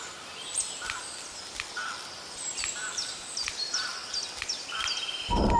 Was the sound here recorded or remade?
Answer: recorded